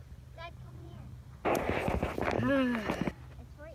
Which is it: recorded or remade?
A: recorded